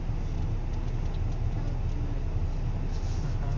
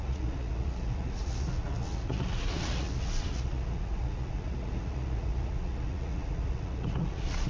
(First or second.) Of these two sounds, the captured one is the first